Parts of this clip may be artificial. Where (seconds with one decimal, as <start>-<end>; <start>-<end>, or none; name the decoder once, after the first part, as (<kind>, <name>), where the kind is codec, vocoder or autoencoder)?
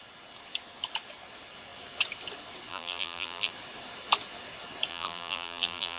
2.7-3.5 (vocoder, BigVGAN v2); 4.9-6.0